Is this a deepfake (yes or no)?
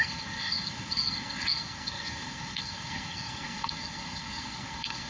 yes